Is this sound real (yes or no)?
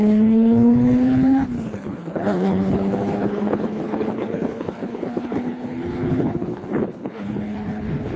no